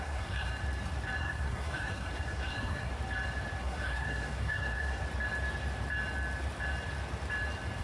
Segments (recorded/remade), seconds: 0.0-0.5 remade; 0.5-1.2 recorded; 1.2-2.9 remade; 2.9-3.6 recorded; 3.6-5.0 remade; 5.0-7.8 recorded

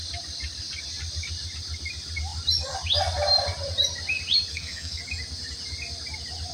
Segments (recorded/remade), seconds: 0.0-4.5 recorded; 4.5-5.0 remade; 5.0-6.5 recorded

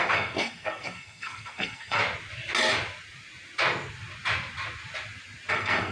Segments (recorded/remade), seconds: 0.0-2.0 remade; 2.0-5.5 recorded; 5.5-5.9 remade

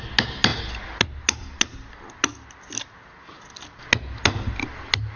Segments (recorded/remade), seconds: 0.0-5.2 recorded

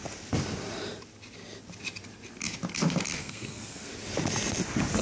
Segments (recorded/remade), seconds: 0.0-3.2 recorded; 3.2-3.9 remade; 3.9-5.0 recorded

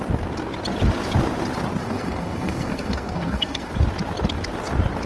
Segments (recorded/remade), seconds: 0.0-1.8 recorded; 1.8-3.7 remade; 3.7-5.1 recorded

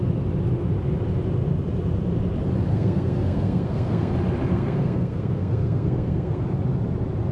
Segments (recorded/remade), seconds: 0.0-2.7 recorded; 2.7-4.1 remade; 4.1-4.5 recorded; 4.5-6.4 remade; 6.4-7.3 recorded